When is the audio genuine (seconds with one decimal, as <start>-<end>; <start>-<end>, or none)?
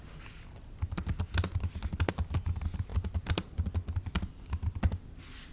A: 0.0-5.5